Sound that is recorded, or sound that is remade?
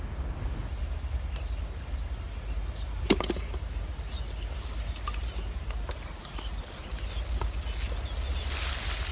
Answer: recorded